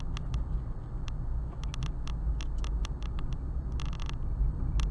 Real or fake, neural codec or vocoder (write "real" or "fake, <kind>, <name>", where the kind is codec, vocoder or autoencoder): real